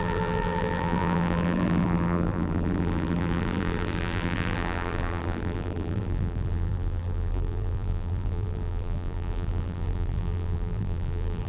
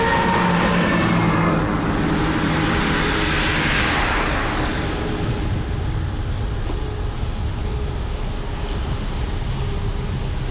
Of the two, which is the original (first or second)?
second